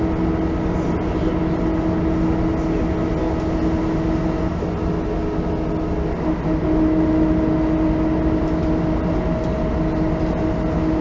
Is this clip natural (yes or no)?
yes